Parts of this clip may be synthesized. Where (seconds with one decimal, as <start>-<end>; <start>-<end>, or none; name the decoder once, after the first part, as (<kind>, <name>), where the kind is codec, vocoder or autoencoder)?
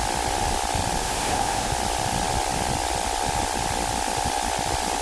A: 1.0-1.7 (codec, SNAC)